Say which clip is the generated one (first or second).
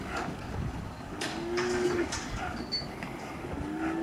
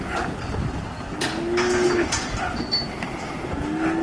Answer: first